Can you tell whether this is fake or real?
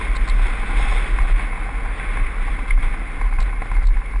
real